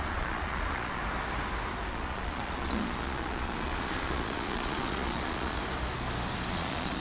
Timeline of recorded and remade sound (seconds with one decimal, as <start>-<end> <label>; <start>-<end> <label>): 0.0-1.0 remade; 1.0-1.9 recorded; 1.9-5.6 remade; 5.6-6.5 recorded; 6.5-7.0 remade